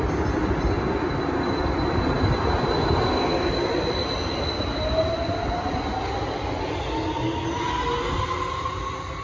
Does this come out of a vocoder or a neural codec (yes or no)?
no